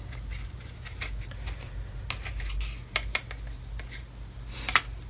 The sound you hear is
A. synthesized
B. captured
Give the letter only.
B